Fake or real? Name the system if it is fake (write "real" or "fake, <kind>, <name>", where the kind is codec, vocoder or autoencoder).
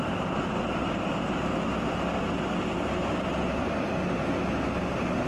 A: real